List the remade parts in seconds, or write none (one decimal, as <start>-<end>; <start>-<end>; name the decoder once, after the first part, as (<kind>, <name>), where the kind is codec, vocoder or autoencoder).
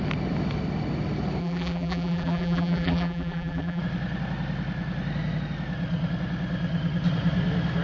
1.4-3.8 (vocoder, BigVGAN v2)